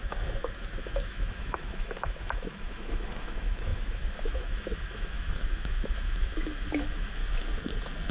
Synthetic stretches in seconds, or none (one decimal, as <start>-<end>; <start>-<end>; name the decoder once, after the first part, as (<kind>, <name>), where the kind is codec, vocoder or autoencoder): 0.5-7.2 (autoencoder, DAC-VAE)